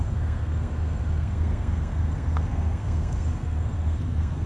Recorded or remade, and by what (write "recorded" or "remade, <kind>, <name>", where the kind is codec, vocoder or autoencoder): remade, codec, SNAC